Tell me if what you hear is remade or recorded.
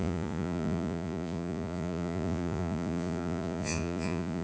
remade